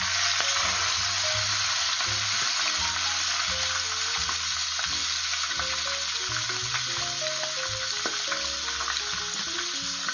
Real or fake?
real